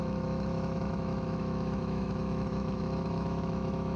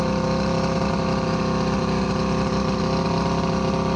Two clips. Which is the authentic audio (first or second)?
second